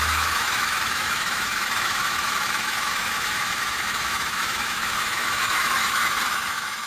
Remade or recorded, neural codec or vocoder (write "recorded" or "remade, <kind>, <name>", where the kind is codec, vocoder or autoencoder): remade, autoencoder, DAC-VAE